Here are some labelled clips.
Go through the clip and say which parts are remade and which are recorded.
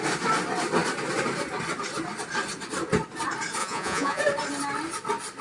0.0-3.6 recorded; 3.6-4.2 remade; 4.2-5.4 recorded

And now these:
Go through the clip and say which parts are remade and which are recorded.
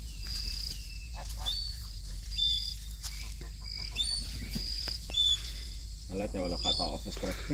0.0-2.7 remade; 2.7-3.9 recorded; 3.9-7.5 remade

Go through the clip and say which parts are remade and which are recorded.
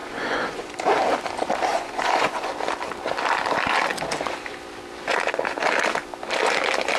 0.0-0.7 remade; 0.7-1.7 recorded; 1.7-2.5 remade; 2.5-7.0 recorded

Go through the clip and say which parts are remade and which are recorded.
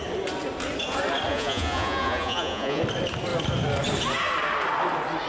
0.0-1.3 recorded; 1.3-2.8 remade; 2.8-5.3 recorded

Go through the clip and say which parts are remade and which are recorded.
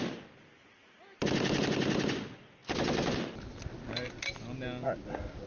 0.0-5.5 recorded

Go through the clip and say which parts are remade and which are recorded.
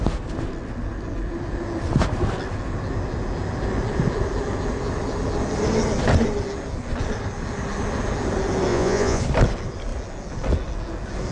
0.0-8.7 recorded; 8.7-9.2 remade; 9.2-11.3 recorded